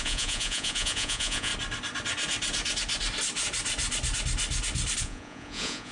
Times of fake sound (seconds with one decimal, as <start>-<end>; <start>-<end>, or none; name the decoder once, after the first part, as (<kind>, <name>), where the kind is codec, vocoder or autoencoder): 0.0-1.5 (vocoder, Vocos); 5.0-5.9